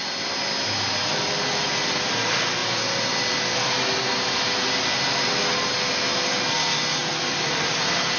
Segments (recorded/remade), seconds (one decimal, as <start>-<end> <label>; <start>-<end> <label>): 0.0-8.2 recorded